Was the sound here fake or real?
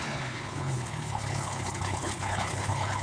fake